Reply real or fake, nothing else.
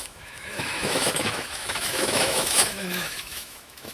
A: fake